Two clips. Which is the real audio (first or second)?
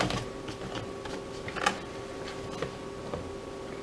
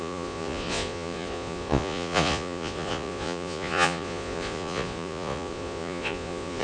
first